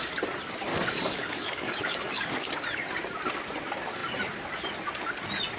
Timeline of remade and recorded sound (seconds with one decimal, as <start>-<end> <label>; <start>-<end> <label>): 0.0-0.7 recorded; 0.7-2.5 remade; 2.5-5.6 recorded